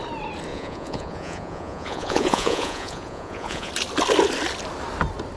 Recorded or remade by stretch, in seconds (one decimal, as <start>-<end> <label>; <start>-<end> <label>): 0.0-0.5 recorded; 0.5-3.7 remade; 3.7-5.4 recorded